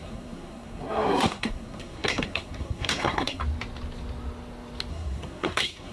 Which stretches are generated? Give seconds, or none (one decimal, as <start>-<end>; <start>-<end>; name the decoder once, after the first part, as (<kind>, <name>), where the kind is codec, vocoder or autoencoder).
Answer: 0.0-3.4 (codec, SNAC); 4.9-5.9